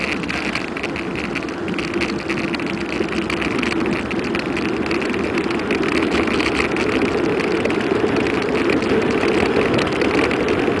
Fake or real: real